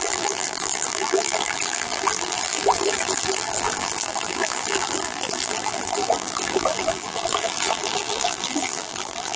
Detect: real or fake fake